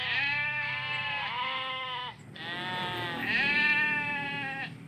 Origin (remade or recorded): remade